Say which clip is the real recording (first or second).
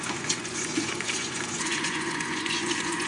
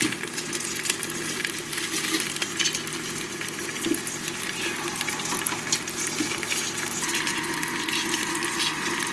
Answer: second